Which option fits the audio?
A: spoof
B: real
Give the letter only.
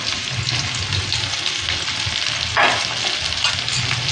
B